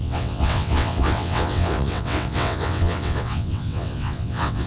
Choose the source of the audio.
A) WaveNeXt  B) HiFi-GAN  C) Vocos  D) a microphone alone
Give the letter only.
A